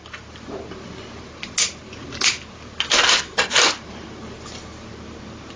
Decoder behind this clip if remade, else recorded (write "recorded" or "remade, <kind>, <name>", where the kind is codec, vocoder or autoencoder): recorded